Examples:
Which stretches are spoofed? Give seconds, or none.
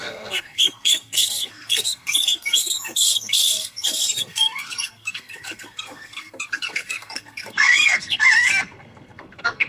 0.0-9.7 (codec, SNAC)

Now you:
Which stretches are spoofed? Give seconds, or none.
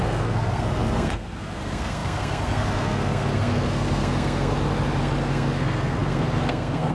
0.0-4.5 (codec, SNAC); 5.0-6.9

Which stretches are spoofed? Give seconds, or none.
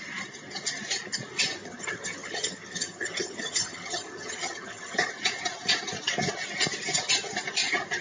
1.6-5.1 (vocoder, HiFi-GAN)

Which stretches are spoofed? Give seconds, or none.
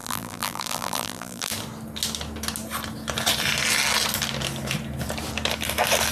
0.0-1.5 (vocoder, BigVGAN v2)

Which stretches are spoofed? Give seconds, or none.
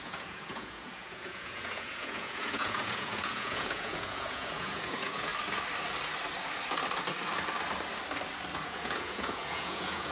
0.0-5.3 (vocoder, Vocos); 8.6-10.1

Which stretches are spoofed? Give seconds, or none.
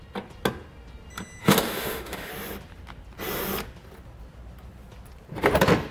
1.4-2.3 (autoencoder, DAC-VAE)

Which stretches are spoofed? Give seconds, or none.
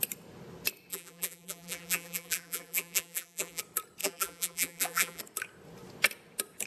0.9-3.6 (vocoder, BigVGAN v2); 4.0-5.2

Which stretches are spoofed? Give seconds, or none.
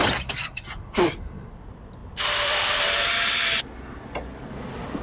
2.0-3.6 (vocoder, BigVGAN v2)